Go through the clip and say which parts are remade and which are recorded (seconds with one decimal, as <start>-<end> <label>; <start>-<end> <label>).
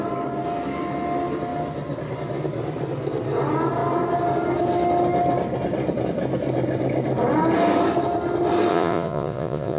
0.0-8.7 recorded; 8.7-9.8 remade